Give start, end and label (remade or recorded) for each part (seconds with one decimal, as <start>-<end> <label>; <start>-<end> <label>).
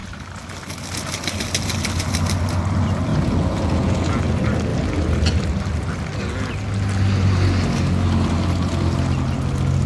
0.0-3.1 recorded; 3.1-4.2 remade; 4.2-9.9 recorded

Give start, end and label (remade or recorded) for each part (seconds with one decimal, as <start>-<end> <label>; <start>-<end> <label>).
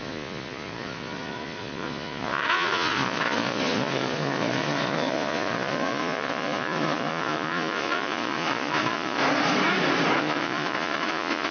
0.0-9.2 remade; 9.2-10.2 recorded; 10.2-11.5 remade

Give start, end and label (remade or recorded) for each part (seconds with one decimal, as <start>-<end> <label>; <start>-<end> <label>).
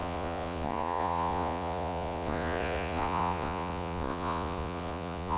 0.0-5.4 remade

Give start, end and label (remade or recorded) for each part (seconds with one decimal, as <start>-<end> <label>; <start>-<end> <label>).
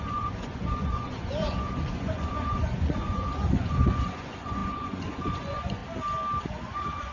0.0-5.8 remade; 5.8-6.4 recorded; 6.4-7.1 remade